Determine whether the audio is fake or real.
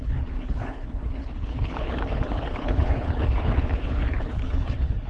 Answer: fake